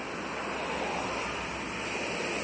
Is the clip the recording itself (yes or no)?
yes